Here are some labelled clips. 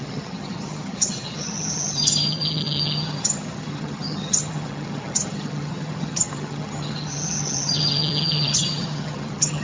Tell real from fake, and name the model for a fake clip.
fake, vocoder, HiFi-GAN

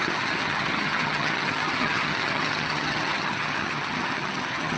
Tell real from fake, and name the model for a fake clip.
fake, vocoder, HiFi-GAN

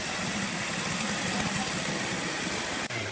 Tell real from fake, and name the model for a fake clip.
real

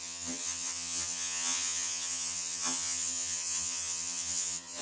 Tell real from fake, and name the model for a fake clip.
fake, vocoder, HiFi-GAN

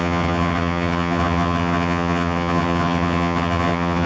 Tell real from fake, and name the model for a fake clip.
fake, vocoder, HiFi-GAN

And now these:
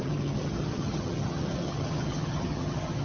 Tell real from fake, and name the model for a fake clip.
fake, vocoder, HiFi-GAN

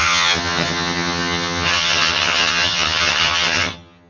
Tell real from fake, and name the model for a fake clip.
fake, vocoder, HiFi-GAN